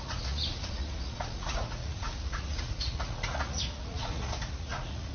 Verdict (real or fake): fake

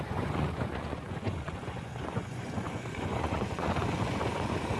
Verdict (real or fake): fake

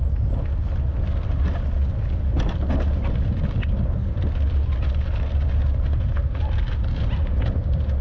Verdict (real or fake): real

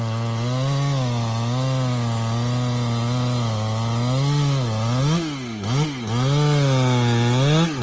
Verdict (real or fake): real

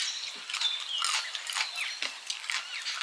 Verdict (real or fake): real